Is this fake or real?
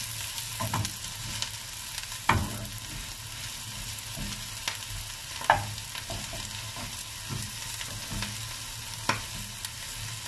real